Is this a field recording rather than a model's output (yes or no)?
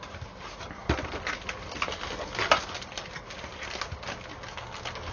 yes